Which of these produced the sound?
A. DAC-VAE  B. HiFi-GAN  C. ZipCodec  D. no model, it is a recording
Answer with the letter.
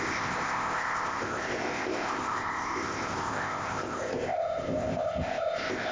C